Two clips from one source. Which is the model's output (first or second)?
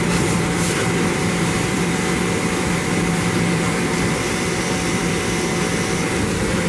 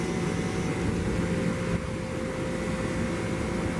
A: first